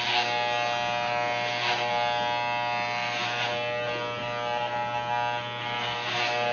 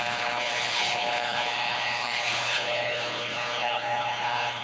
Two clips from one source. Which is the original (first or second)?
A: first